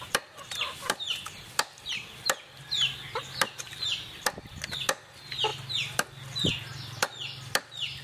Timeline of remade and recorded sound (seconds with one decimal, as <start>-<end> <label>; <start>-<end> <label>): 0.0-8.0 recorded